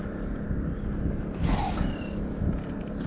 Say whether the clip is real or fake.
real